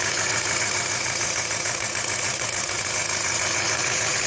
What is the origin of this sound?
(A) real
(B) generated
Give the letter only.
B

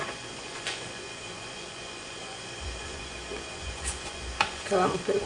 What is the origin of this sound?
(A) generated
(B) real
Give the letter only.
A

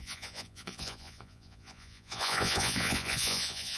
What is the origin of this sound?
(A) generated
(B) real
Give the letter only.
A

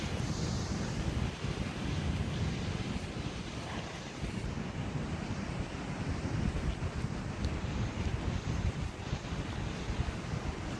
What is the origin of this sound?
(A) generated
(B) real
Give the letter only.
B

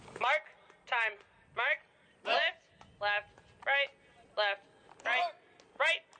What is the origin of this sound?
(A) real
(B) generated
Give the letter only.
A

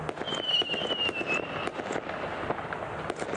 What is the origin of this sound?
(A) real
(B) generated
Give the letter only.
A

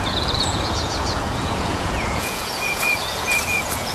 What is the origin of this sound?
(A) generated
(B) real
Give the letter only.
A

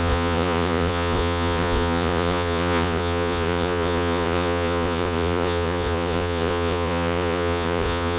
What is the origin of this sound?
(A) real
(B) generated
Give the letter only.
B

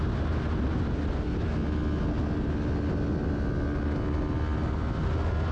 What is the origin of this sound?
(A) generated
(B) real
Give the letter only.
B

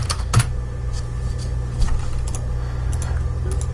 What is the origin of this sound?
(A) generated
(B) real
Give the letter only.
B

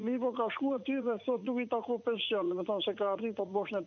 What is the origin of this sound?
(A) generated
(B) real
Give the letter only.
A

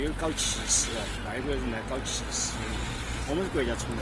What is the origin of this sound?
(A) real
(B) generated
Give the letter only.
A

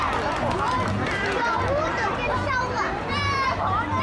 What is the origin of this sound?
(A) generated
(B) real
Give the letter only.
B